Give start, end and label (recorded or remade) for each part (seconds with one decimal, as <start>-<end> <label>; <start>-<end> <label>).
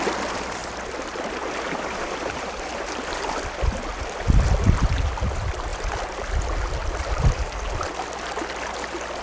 0.0-0.6 recorded; 0.6-4.0 remade; 4.0-5.7 recorded; 5.7-6.2 remade; 6.2-9.2 recorded